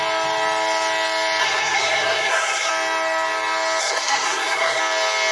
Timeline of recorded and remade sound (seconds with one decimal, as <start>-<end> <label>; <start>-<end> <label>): 0.0-1.4 recorded; 1.4-2.7 remade; 2.7-3.8 recorded; 3.8-4.8 remade; 4.8-5.3 recorded